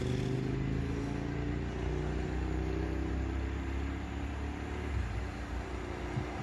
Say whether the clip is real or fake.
real